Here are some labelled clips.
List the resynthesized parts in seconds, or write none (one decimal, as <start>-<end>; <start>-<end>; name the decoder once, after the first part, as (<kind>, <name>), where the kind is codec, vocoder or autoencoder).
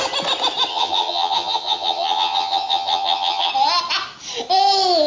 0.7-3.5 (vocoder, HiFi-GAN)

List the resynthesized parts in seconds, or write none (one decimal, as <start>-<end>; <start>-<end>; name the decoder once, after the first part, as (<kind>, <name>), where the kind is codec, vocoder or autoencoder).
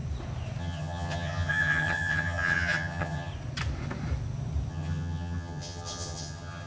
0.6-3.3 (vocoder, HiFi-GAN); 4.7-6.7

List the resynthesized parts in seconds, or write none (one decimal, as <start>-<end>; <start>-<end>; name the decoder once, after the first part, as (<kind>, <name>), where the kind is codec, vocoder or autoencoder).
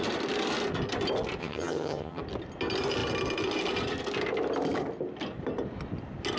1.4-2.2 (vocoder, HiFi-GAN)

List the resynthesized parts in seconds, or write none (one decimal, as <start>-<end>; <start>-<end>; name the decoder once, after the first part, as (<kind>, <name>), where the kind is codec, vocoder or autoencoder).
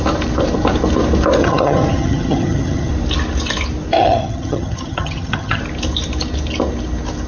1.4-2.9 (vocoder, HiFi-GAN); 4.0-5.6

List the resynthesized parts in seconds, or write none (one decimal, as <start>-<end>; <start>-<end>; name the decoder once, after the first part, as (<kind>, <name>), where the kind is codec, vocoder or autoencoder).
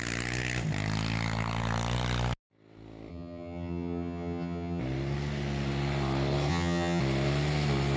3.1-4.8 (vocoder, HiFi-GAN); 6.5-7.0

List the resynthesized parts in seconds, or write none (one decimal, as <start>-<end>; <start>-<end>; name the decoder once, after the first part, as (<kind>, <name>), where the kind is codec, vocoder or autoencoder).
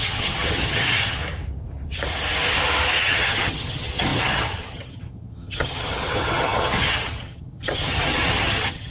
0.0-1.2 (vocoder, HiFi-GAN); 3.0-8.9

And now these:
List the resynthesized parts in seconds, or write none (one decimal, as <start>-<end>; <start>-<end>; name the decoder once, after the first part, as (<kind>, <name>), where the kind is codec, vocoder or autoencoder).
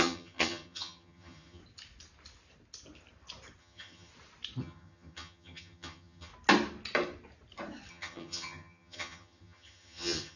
0.0-1.6 (vocoder, HiFi-GAN); 3.6-4.1; 4.6-6.3; 7.9-10.4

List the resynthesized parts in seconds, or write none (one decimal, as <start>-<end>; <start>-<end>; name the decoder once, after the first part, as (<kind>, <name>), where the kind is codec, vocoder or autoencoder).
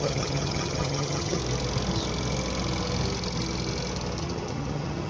0.0-1.4 (vocoder, HiFi-GAN); 4.2-5.1